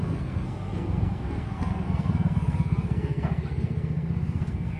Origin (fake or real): fake